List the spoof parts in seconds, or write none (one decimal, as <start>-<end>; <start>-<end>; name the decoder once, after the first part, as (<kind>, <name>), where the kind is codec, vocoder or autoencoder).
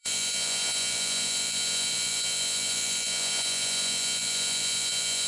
0.0-5.3 (vocoder, Vocos)